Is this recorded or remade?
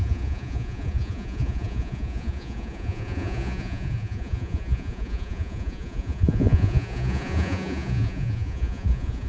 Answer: remade